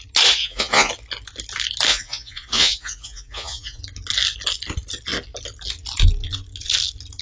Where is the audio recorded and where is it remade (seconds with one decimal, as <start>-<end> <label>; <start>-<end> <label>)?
0.0-0.4 recorded; 0.4-0.9 remade; 0.9-1.9 recorded; 1.9-3.8 remade; 3.8-7.2 recorded

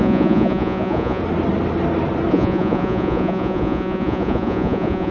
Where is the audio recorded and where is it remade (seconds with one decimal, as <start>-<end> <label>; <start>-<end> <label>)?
0.0-1.2 remade; 1.2-2.3 recorded; 2.3-5.1 remade

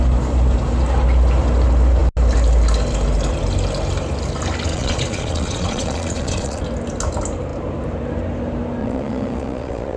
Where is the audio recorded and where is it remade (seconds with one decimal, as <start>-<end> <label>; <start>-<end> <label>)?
0.0-4.7 recorded; 4.7-6.6 remade; 6.6-8.8 recorded; 8.8-10.0 remade

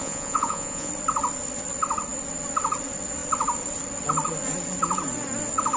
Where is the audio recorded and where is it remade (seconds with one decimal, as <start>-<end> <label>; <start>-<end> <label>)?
0.0-0.9 remade; 0.9-5.8 recorded

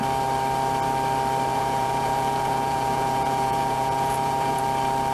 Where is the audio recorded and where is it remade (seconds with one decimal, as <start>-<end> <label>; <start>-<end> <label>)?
0.0-1.5 recorded; 1.5-4.6 remade; 4.6-5.1 recorded

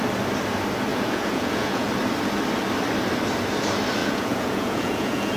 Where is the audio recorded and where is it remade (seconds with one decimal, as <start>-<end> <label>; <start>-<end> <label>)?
0.0-0.9 recorded; 0.9-1.9 remade; 1.9-4.0 recorded; 4.0-5.4 remade

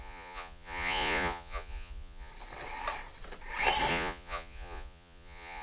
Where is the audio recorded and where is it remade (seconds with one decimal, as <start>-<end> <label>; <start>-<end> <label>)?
0.0-2.3 remade; 2.3-3.9 recorded; 3.9-5.6 remade